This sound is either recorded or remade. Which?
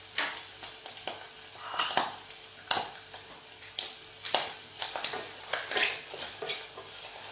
recorded